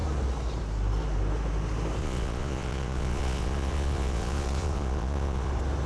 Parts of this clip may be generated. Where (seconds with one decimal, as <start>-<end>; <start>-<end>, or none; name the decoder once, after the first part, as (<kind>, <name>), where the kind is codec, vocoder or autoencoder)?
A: 2.0-5.5 (vocoder, Vocos)